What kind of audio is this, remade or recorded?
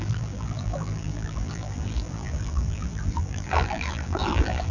remade